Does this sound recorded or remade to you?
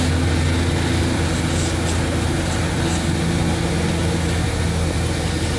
recorded